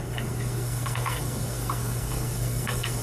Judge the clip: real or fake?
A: fake